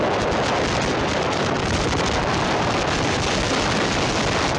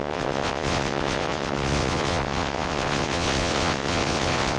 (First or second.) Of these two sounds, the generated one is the second